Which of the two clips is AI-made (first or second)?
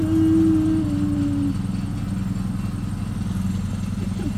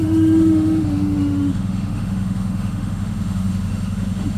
second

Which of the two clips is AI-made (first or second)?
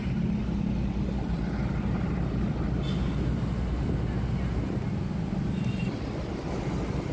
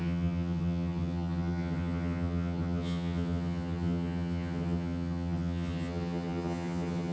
second